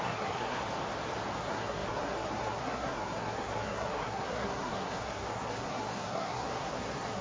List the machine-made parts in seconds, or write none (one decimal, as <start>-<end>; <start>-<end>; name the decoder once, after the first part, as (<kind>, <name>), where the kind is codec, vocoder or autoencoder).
0.0-0.6 (codec, SNAC); 1.4-7.2